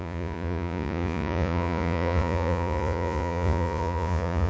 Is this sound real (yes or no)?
no